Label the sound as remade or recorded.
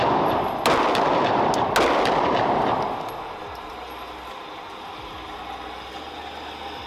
recorded